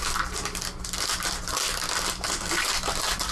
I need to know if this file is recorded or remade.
recorded